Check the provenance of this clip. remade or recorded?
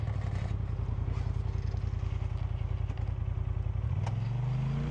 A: recorded